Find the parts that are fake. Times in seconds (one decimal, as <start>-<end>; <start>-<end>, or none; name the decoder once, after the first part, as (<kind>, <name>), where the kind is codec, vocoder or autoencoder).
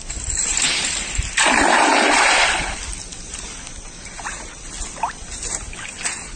none